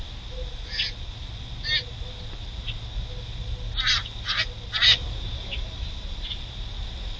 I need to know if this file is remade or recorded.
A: recorded